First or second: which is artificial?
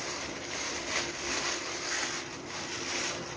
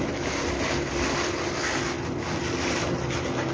first